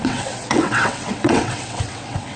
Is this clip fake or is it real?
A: fake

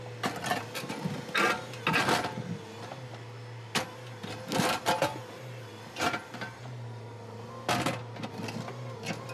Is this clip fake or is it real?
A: real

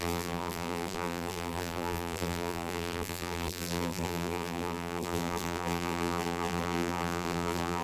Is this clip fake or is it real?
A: fake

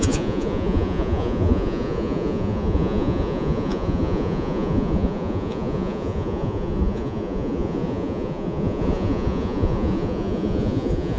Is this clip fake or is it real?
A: fake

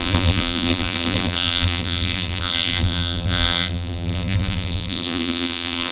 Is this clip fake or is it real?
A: fake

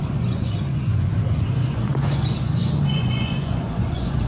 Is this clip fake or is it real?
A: fake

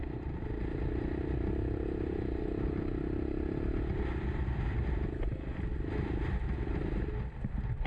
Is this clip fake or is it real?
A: real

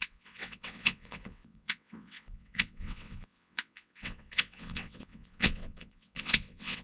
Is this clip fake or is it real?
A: fake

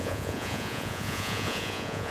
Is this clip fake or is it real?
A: fake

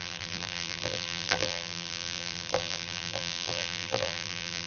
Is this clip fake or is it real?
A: fake